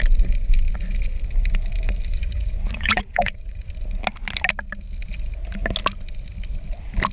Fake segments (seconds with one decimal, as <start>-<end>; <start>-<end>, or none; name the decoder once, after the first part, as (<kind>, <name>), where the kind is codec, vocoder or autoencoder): 2.1-3.7 (vocoder, Vocos)